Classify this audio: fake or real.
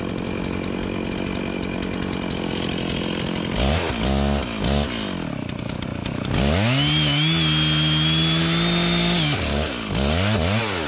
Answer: real